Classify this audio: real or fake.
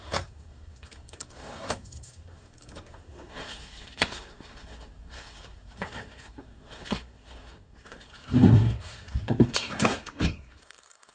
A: fake